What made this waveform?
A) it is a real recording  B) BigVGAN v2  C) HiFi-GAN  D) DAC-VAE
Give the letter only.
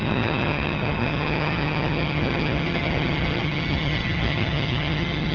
C